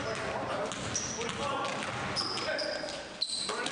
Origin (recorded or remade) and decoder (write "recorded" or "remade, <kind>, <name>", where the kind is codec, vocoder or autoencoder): recorded